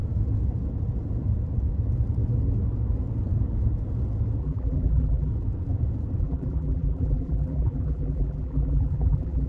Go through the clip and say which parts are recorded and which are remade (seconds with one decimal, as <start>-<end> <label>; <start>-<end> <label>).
0.0-4.4 recorded; 4.4-5.3 remade; 5.3-6.2 recorded; 6.2-9.5 remade

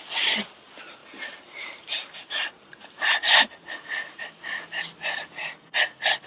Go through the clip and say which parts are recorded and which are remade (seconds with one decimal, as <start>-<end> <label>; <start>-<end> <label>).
0.0-1.0 recorded; 1.0-4.8 remade; 4.8-6.3 recorded

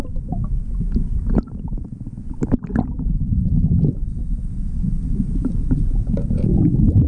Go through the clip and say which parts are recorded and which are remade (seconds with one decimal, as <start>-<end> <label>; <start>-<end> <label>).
0.0-2.7 recorded; 2.7-7.1 remade

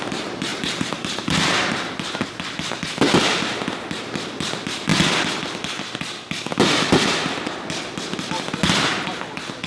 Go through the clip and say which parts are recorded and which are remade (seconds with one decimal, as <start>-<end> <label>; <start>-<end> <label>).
0.0-0.5 recorded; 0.5-2.3 remade; 2.3-9.7 recorded